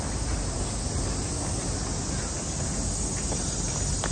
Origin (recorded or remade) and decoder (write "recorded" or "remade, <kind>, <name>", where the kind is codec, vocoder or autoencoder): recorded